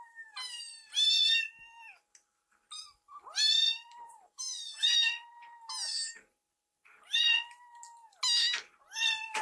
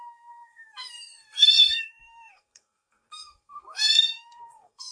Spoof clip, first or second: second